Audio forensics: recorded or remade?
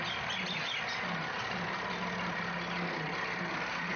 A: recorded